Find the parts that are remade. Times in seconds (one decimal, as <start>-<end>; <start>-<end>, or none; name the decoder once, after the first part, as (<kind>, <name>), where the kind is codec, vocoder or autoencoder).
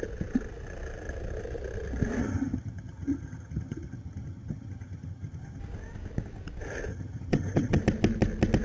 2.2-5.6 (vocoder, HiFi-GAN); 6.9-7.8